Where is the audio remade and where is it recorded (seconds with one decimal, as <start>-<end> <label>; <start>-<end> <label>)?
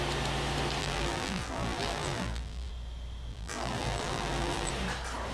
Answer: 0.0-0.8 recorded; 0.8-2.7 remade; 2.7-3.3 recorded; 3.3-4.7 remade; 4.7-5.3 recorded